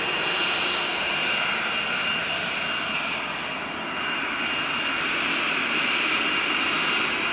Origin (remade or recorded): recorded